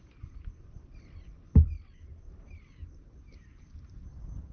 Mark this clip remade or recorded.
recorded